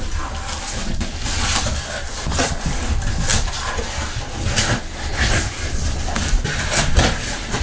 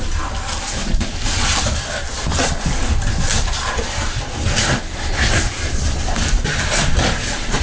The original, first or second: first